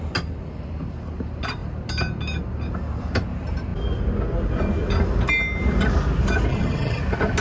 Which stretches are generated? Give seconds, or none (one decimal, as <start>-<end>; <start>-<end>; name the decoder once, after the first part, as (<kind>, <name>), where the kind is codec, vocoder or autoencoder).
6.5-7.0 (vocoder, HiFi-GAN)